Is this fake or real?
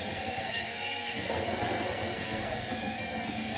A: fake